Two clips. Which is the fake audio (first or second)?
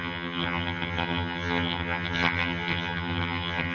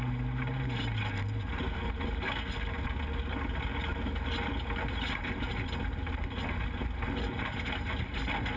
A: first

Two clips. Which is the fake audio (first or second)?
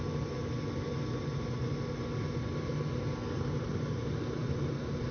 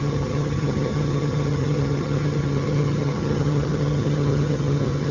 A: second